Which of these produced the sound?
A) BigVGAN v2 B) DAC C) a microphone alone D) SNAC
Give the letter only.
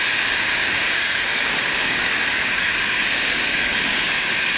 B